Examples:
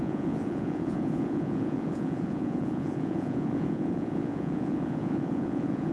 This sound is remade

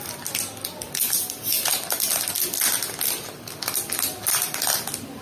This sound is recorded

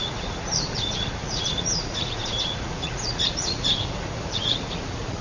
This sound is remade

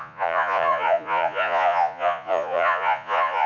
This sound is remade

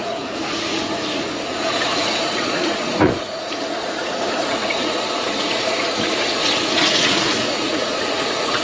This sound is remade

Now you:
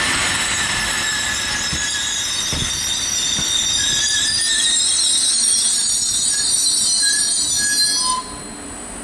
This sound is recorded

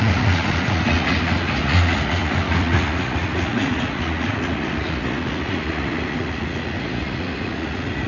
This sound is remade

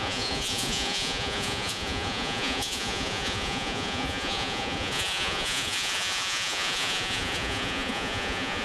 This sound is remade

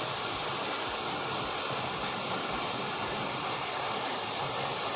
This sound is recorded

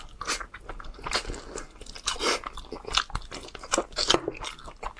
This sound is recorded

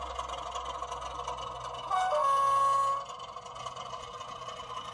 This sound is recorded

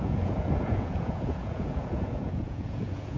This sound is remade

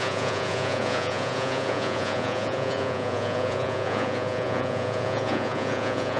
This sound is remade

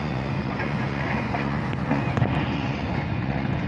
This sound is remade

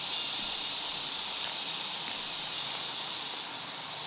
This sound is recorded